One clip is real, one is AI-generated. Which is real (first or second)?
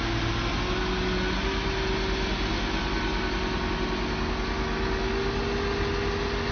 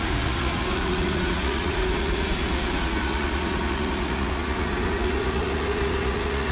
first